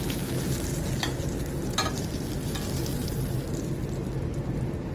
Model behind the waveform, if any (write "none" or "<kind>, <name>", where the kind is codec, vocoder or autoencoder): none